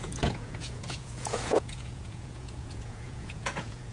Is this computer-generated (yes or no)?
yes